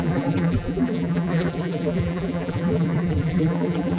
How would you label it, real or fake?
fake